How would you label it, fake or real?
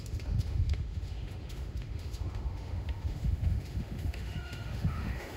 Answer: fake